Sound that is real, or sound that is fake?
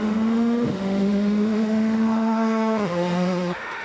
fake